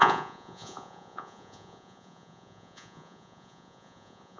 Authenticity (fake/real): fake